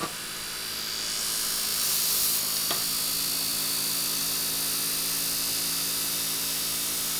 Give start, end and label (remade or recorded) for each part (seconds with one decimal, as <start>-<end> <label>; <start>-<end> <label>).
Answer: 0.0-1.7 recorded; 1.7-2.4 remade; 2.4-3.5 recorded; 3.5-4.2 remade; 4.2-7.2 recorded